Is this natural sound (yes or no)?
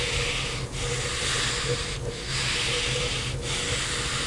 yes